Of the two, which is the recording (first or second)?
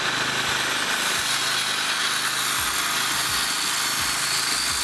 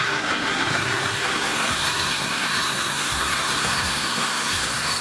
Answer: first